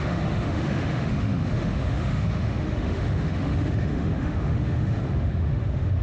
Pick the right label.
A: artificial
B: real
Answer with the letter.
A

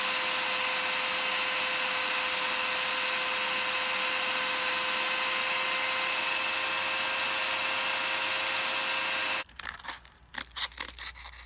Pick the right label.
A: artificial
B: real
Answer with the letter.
B